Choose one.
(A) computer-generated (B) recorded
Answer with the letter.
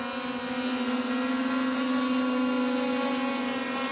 B